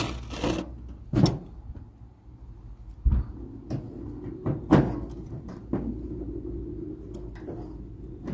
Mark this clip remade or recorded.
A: recorded